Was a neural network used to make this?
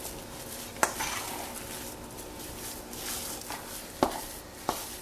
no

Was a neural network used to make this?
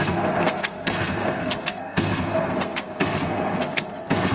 yes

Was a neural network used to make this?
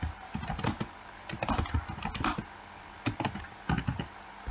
no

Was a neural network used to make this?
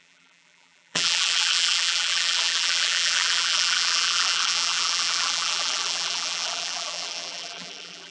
yes